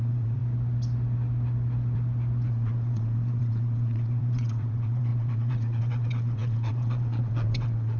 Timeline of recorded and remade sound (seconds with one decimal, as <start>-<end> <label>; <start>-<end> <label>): 0.0-0.4 remade; 0.4-2.5 recorded; 2.5-8.0 remade